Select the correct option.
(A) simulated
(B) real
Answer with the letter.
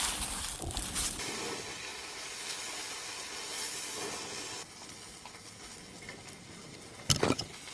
B